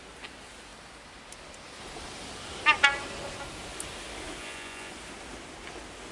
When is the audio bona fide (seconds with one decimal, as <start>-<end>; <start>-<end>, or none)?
0.0-4.4; 4.9-6.1